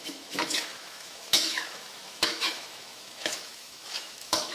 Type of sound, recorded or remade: remade